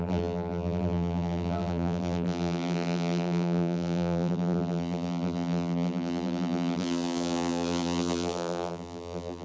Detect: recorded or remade remade